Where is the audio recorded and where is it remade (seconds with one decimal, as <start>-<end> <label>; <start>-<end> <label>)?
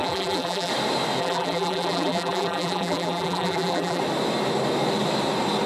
0.0-0.7 remade; 0.7-1.2 recorded; 1.2-4.0 remade; 4.0-5.7 recorded